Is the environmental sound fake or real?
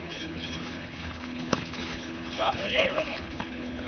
fake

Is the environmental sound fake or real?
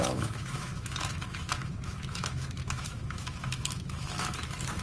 fake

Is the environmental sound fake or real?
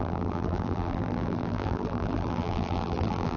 fake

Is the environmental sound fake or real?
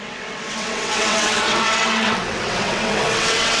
fake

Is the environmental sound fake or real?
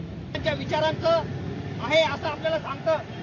real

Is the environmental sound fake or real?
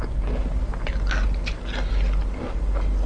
real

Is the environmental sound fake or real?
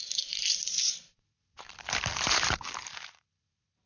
fake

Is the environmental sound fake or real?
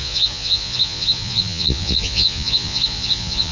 fake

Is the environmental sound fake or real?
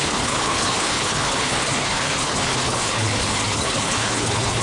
fake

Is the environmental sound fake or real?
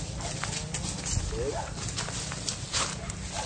real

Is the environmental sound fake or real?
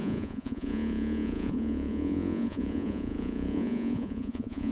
fake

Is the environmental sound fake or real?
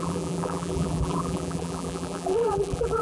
fake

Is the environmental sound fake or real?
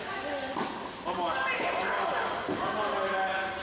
real